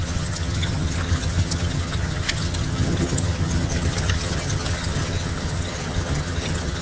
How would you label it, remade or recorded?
remade